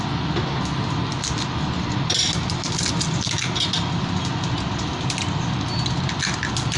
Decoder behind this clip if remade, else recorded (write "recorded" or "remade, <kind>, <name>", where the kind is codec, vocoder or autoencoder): recorded